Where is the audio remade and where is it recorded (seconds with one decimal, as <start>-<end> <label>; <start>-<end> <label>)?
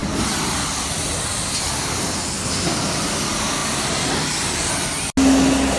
0.0-5.8 recorded